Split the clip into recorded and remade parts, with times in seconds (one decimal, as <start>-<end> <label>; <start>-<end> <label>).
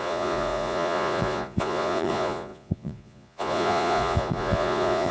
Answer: 0.0-5.1 remade